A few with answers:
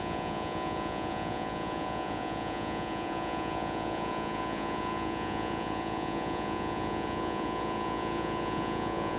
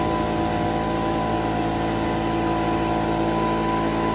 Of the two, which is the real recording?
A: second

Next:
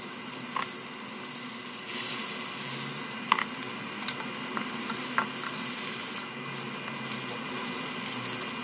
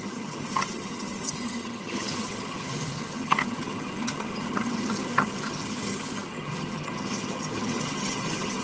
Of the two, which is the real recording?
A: first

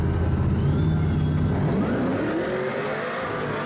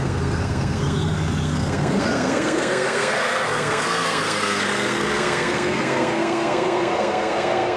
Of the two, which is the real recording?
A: first